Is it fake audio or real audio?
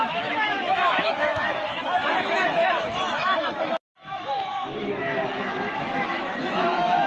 fake